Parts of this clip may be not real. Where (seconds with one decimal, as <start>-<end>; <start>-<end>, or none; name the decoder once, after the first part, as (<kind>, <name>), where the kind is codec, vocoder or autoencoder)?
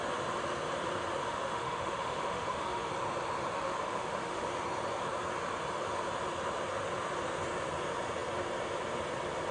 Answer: 1.3-2.9 (autoencoder, DAC-VAE); 3.5-4.5